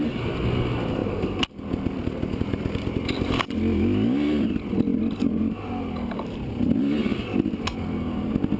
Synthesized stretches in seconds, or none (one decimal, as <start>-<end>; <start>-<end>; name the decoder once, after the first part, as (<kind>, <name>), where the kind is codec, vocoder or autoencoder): none